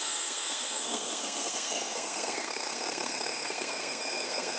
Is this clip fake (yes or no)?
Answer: yes